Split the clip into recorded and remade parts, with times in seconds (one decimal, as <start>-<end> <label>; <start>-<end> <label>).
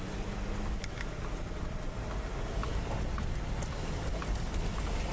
0.0-2.7 recorded; 2.7-3.3 remade; 3.3-5.1 recorded